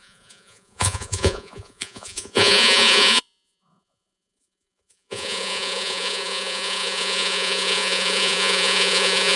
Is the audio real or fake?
fake